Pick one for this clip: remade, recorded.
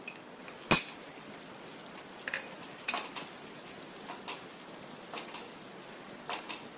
recorded